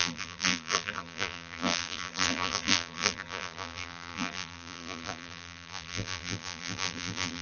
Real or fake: fake